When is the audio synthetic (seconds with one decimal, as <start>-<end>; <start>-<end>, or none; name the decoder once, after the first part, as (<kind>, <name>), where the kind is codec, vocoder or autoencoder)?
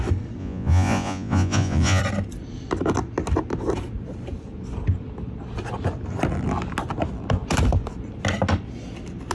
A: 0.4-2.0 (vocoder, Vocos)